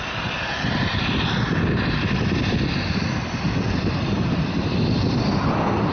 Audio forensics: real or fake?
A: real